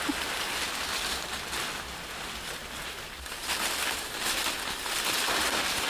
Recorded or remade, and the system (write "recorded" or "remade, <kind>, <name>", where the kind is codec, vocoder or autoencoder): recorded